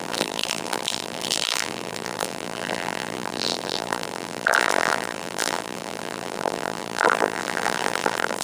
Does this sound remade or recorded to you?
remade